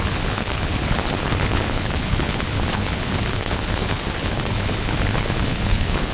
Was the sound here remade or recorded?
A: remade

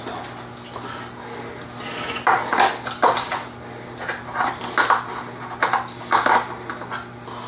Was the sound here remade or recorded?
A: recorded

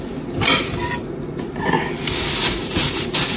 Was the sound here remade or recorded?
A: recorded